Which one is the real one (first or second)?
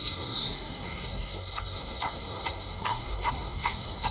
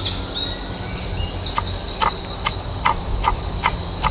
second